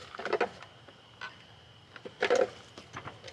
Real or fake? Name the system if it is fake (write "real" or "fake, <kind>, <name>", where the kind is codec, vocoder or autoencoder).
real